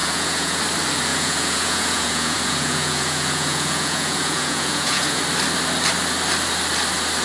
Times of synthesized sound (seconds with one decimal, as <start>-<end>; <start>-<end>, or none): 0.0-0.6; 1.1-5.2